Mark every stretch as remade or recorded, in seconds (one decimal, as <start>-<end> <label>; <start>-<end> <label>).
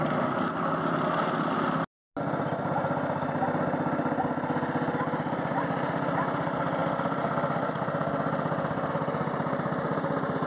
0.0-10.5 recorded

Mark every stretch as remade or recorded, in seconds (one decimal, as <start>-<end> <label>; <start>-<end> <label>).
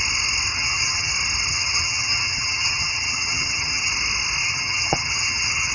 0.0-0.5 recorded; 0.5-1.1 remade; 1.1-1.5 recorded; 1.5-3.9 remade; 3.9-4.4 recorded; 4.4-5.7 remade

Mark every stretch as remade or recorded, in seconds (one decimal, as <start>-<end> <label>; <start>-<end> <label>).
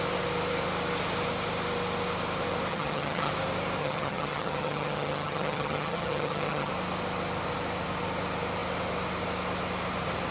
0.0-2.7 recorded; 2.7-3.3 remade; 3.3-3.8 recorded; 3.8-6.7 remade; 6.7-10.3 recorded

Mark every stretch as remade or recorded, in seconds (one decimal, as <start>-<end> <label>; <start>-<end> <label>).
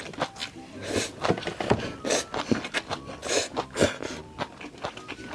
0.0-5.3 recorded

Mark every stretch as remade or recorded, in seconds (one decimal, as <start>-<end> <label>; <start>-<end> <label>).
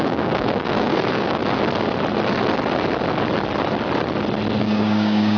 0.0-1.4 remade; 1.4-4.6 recorded; 4.6-5.4 remade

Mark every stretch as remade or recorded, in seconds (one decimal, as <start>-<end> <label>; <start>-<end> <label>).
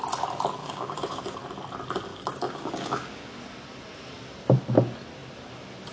0.0-0.6 recorded; 0.6-1.2 remade; 1.2-2.1 recorded; 2.1-3.3 remade; 3.3-5.9 recorded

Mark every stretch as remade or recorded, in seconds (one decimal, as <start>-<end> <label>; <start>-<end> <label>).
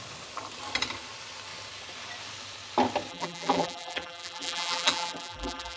0.0-3.1 recorded; 3.1-5.8 remade